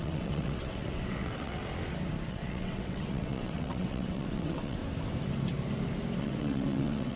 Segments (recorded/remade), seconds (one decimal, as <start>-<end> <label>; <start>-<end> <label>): 0.0-1.6 remade; 1.6-2.3 recorded; 2.3-4.8 remade; 4.8-6.2 recorded; 6.2-7.2 remade